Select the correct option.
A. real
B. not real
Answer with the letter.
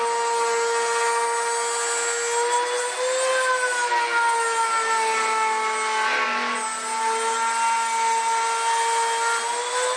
A